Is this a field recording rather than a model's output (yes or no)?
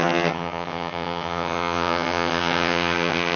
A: no